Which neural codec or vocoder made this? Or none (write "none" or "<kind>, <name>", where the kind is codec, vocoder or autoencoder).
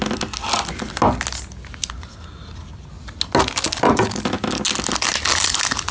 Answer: none